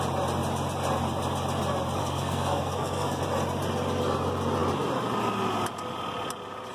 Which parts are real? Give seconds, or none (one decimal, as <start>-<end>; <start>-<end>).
0.0-2.0; 3.2-6.7